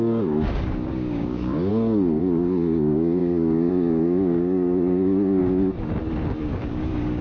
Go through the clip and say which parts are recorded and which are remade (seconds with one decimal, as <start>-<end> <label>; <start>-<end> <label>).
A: 0.0-5.4 remade; 5.4-6.4 recorded; 6.4-7.2 remade